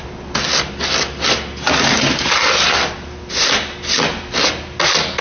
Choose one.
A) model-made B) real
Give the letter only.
B